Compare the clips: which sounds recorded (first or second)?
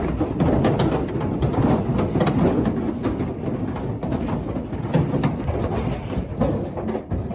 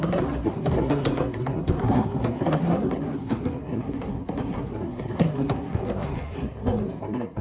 first